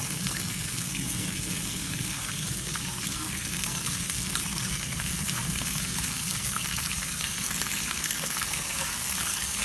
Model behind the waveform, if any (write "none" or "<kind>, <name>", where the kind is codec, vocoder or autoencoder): codec, SNAC